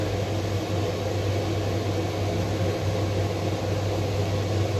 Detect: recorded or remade recorded